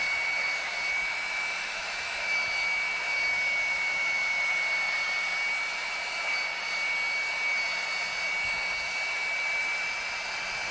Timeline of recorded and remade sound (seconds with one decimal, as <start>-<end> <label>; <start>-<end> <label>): 0.0-0.4 recorded; 0.4-4.4 remade; 4.4-10.7 recorded